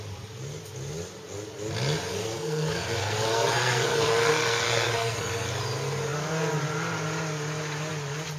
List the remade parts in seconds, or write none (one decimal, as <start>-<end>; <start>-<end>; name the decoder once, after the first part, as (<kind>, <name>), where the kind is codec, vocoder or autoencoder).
2.1-5.5 (codec, SNAC)

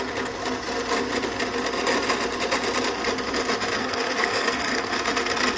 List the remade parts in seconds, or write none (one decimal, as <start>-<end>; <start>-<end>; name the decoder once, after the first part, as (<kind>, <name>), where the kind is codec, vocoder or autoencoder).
3.8-4.9 (codec, SNAC)

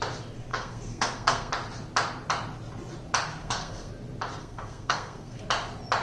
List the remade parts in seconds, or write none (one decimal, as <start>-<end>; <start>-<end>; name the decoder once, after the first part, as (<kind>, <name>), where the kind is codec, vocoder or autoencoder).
0.5-1.5 (codec, SNAC); 3.4-3.9; 4.4-5.4

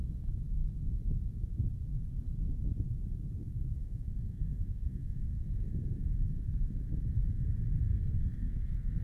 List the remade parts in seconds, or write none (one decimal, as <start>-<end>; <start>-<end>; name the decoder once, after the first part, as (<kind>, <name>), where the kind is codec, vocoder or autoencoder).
3.4-5.7 (codec, SNAC); 7.9-9.0

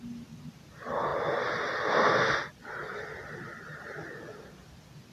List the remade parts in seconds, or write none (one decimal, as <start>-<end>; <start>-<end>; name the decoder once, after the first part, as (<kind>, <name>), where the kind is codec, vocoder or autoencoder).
none